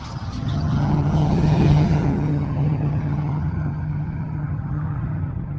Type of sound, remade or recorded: remade